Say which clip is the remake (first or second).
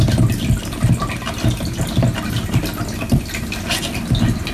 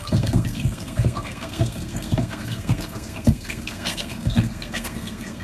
second